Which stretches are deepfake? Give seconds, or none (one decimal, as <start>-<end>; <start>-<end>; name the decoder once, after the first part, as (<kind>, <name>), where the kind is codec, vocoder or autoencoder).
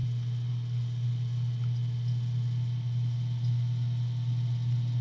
none